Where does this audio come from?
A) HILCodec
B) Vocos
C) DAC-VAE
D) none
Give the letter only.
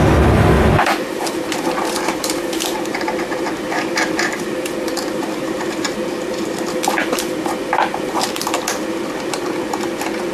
D